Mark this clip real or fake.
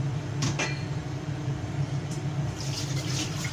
fake